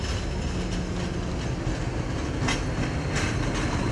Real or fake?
real